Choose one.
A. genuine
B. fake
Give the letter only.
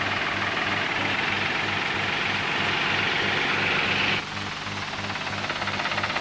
A